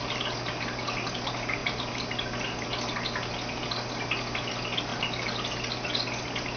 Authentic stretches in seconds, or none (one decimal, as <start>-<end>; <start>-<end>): 0.0-6.6